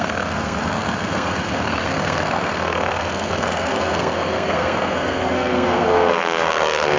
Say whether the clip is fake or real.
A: fake